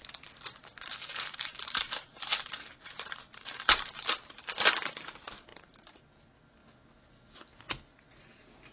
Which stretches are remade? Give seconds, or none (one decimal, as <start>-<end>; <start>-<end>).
0.7-3.9; 5.5-6.1